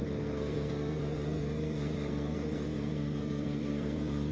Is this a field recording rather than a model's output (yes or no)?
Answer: no